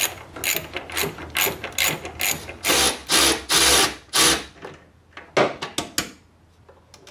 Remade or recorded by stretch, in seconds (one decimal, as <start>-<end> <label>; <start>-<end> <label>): 0.0-7.1 recorded